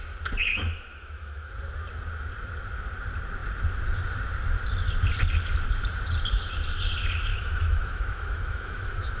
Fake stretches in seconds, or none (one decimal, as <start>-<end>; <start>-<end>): 0.5-1.5; 7.3-9.2